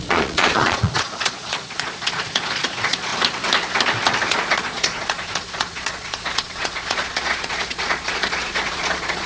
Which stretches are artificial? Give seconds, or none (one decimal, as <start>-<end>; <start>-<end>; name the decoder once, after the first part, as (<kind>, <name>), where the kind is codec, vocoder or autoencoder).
0.0-3.1 (vocoder, Vocos); 4.3-9.3